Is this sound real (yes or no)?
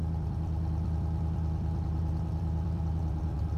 no